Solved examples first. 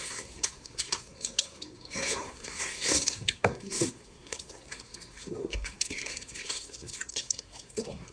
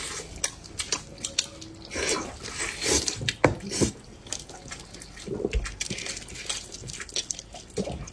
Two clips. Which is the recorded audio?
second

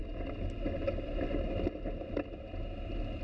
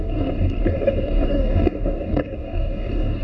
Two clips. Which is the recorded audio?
first